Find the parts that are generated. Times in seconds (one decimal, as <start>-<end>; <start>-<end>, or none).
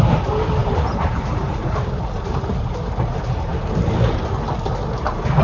0.6-2.3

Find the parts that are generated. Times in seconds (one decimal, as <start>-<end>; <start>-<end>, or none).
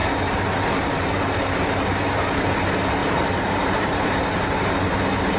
3.0-4.0